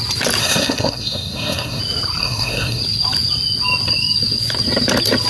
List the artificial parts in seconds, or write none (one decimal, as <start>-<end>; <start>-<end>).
0.4-1.8; 2.2-2.8